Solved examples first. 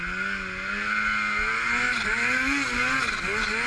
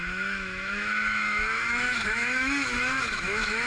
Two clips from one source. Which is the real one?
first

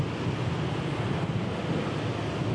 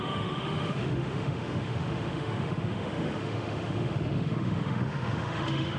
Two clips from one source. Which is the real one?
first